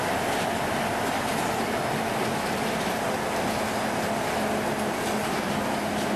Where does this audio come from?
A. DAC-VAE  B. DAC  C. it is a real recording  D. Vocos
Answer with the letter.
C